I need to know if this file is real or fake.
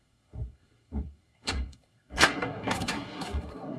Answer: fake